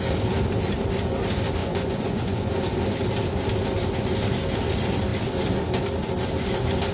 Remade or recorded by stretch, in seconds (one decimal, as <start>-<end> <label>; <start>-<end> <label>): 0.0-1.6 recorded; 1.6-2.5 remade; 2.5-6.9 recorded